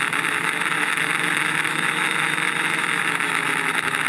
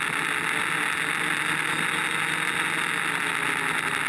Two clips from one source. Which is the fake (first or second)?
first